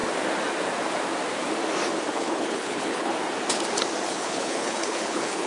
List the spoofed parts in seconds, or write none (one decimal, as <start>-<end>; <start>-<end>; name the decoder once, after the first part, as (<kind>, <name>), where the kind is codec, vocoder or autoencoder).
2.1-3.1 (codec, HILCodec); 4.1-5.5